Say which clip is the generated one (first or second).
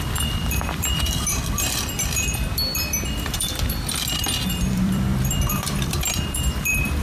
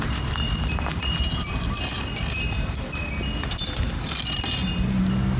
first